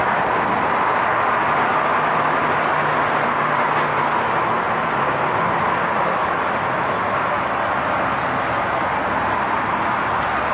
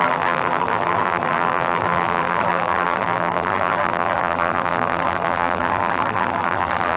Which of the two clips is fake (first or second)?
second